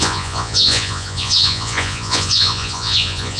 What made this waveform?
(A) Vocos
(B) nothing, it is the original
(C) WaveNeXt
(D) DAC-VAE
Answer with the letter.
A